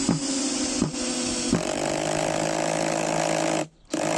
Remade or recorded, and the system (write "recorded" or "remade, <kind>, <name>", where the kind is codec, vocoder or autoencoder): recorded